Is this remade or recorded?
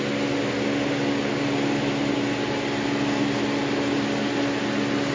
recorded